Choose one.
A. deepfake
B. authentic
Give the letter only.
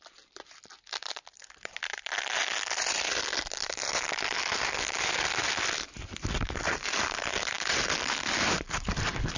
A